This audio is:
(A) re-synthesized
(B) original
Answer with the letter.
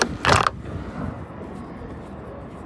B